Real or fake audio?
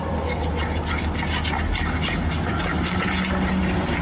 real